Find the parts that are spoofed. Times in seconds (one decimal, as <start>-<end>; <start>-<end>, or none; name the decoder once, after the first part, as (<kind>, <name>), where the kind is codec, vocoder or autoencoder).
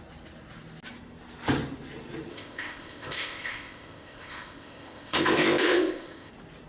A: 2.3-6.3 (codec, ZipCodec)